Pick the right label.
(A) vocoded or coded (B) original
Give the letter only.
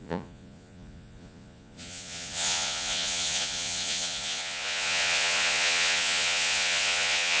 A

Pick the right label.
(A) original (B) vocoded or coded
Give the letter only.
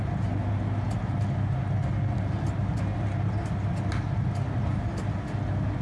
A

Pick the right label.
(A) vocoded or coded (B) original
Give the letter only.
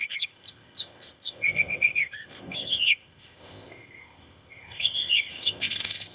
A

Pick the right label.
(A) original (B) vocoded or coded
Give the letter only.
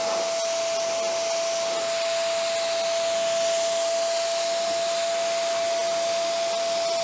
A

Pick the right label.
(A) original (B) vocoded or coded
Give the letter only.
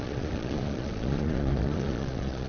B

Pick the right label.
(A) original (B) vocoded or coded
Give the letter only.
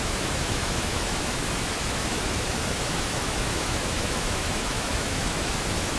B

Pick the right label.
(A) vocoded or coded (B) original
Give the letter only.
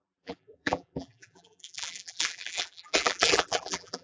A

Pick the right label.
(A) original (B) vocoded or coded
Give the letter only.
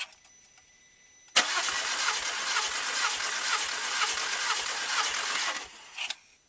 A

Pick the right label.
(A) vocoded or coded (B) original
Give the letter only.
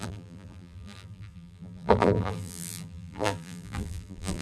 A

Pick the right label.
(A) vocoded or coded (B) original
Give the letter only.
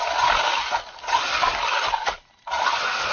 B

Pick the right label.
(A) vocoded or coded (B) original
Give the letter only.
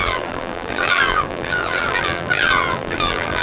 A